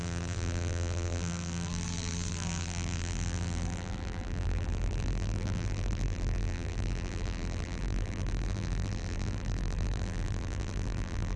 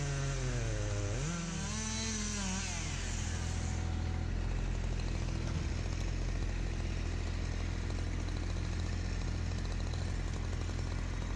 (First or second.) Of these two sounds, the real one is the second